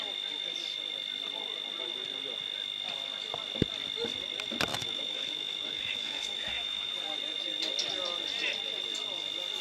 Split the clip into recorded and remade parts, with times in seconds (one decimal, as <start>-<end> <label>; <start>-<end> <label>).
0.0-4.7 recorded; 4.7-6.9 remade; 6.9-9.6 recorded